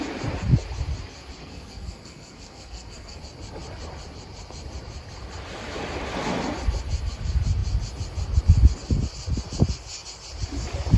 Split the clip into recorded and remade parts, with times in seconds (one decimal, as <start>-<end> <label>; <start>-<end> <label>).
0.0-1.4 recorded; 1.4-3.2 remade; 3.2-11.0 recorded